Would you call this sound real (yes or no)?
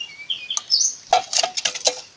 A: yes